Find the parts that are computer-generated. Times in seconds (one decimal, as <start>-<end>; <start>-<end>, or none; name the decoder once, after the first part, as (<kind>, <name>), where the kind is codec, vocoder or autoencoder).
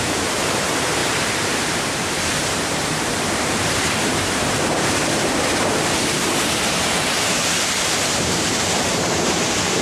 0.0-7.4 (vocoder, BigVGAN v2); 8.1-9.8